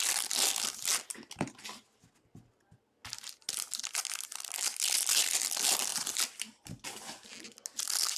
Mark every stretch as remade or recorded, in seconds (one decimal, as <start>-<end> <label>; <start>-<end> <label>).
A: 0.0-8.2 recorded

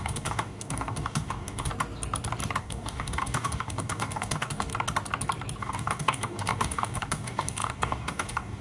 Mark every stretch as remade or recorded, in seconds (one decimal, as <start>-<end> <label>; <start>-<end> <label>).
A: 0.0-1.7 remade; 1.7-2.6 recorded; 2.6-4.7 remade; 4.7-5.6 recorded; 5.6-8.6 remade

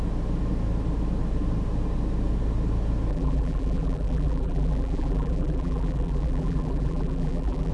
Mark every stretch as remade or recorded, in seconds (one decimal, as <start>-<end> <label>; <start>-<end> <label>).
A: 0.0-3.1 recorded; 3.1-7.7 remade

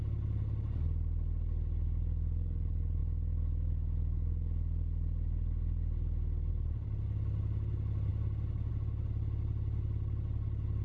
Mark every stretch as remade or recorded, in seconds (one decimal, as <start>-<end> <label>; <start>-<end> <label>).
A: 0.0-10.8 recorded

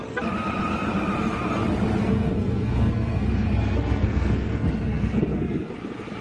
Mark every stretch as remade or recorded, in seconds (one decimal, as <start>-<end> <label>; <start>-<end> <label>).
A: 0.0-2.0 recorded; 2.0-5.7 remade; 5.7-6.2 recorded

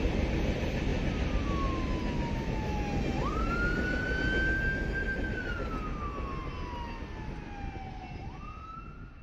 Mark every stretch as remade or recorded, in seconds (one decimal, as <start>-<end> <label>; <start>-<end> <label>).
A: 0.0-9.2 recorded

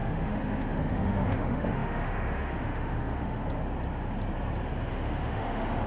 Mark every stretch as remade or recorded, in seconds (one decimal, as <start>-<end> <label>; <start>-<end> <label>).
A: 0.0-3.4 remade; 3.4-4.9 recorded; 4.9-5.9 remade